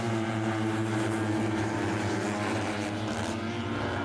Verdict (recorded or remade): remade